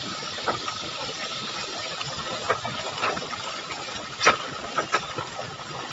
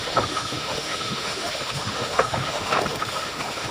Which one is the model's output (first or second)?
second